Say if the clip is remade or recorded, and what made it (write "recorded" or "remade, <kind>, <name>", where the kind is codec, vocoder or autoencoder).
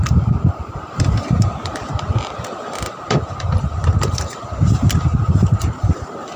remade, vocoder, BigVGAN v2